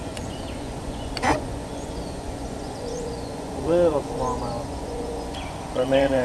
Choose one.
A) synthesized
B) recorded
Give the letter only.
A